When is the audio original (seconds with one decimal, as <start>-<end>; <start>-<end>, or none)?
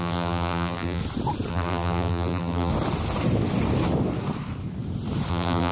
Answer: 1.0-1.5; 2.7-5.3